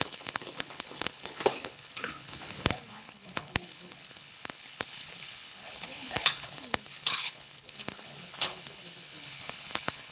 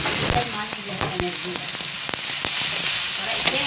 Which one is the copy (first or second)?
first